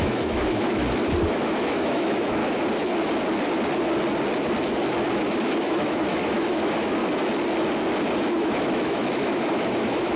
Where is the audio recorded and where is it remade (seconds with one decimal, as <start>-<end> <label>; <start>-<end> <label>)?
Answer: 0.0-0.8 remade; 0.8-1.3 recorded; 1.3-2.4 remade; 2.4-5.1 recorded; 5.1-7.0 remade; 7.0-8.2 recorded; 8.2-10.2 remade